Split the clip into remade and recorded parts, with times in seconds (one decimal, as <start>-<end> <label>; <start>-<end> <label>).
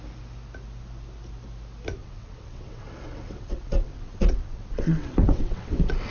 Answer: 0.0-2.0 recorded; 2.0-6.1 remade